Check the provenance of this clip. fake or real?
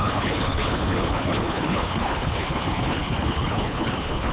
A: fake